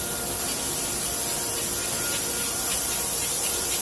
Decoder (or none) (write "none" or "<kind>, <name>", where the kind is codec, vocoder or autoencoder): none